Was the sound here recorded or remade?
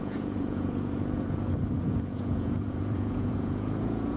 remade